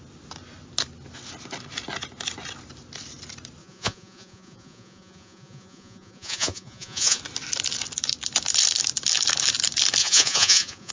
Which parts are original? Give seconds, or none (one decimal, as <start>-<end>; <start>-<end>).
0.0-3.6; 7.2-10.0